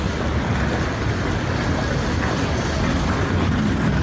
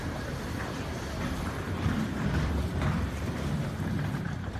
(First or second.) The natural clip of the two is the first